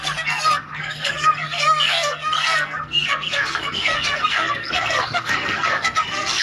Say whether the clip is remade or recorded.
remade